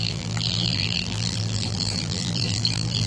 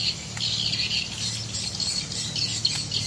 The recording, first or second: second